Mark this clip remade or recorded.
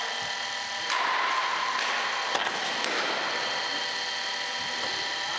recorded